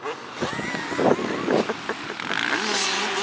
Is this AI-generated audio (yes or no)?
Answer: no